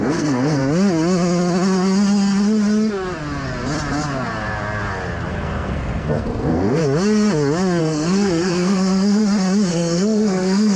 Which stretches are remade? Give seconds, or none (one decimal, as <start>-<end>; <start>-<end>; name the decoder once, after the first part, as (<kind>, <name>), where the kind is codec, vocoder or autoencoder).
0.0-0.6 (codec, SNAC); 5.3-6.8; 7.8-9.2; 9.7-10.8

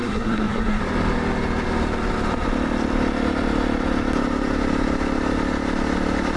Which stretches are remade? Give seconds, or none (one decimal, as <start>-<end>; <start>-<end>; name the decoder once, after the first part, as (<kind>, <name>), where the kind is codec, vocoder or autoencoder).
0.0-0.8 (codec, SNAC)

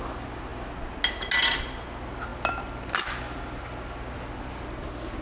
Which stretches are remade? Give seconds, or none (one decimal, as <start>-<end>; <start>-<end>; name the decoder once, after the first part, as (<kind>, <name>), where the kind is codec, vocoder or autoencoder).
none